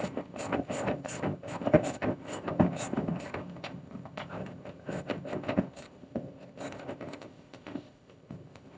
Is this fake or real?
fake